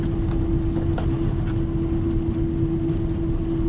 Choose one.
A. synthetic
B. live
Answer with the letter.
B